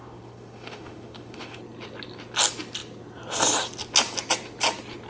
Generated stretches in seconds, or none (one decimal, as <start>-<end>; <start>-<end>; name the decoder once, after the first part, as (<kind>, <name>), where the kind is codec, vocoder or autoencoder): 0.0-1.6 (autoencoder, DAC-VAE)